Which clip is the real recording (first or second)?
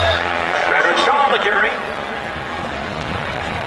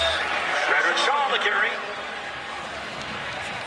second